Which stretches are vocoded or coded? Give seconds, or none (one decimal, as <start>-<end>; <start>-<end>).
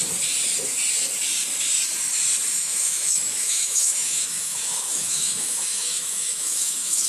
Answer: 2.6-7.1